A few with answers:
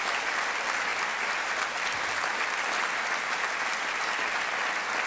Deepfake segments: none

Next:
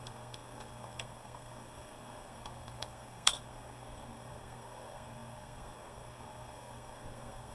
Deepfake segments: 0.0-7.5 (codec, SNAC)

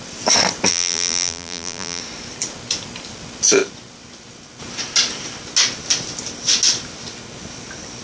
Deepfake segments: 0.7-2.0 (vocoder, BigVGAN v2)

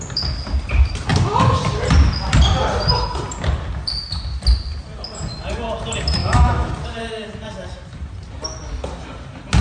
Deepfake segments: 6.2-6.7 (autoencoder, DAC-VAE)

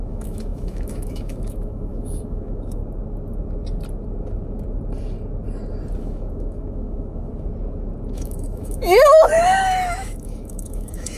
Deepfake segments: 0.0-2.8 (autoencoder, DAC-VAE); 6.0-7.3; 8.1-11.2

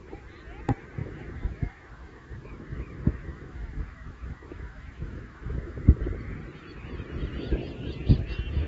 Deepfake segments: 1.0-6.0 (autoencoder, DAC-VAE)